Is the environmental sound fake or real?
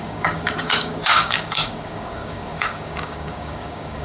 fake